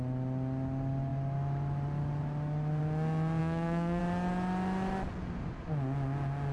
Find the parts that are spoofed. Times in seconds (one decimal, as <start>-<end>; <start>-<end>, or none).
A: 3.4-4.0